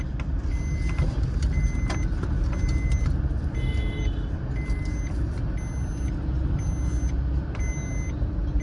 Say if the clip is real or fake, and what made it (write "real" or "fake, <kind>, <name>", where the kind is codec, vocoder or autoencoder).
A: real